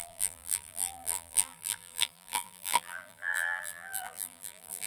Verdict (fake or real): fake